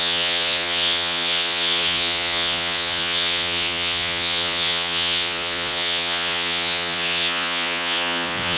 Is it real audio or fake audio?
fake